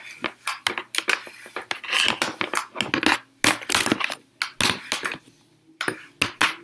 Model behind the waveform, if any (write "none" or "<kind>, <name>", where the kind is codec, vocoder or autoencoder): none